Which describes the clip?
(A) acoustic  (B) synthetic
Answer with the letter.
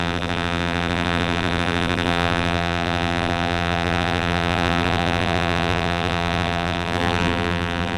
B